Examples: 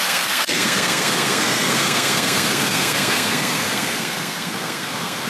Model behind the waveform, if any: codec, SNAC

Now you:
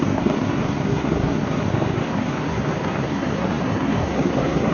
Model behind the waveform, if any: codec, SNAC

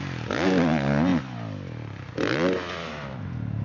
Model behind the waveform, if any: none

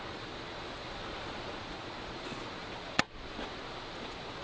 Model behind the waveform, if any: vocoder, Vocos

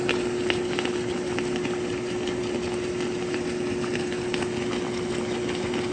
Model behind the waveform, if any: none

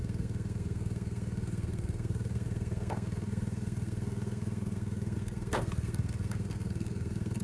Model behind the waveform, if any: codec, SNAC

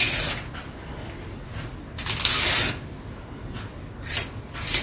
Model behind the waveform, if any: none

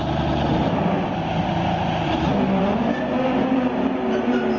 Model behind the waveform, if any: none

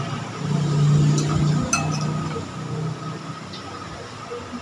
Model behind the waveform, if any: none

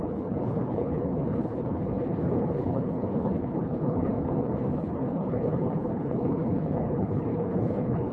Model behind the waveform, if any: codec, HILCodec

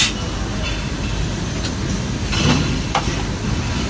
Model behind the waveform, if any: none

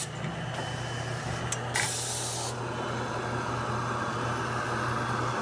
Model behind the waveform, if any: none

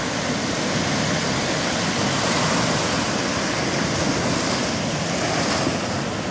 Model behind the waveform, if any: none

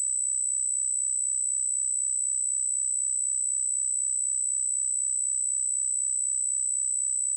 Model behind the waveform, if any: none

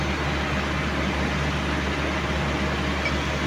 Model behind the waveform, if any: none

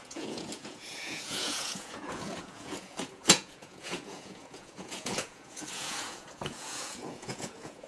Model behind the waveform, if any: vocoder, Vocos